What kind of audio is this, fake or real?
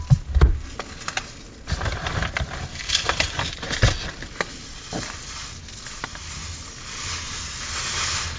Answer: real